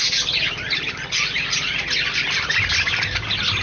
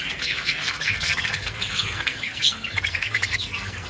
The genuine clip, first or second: first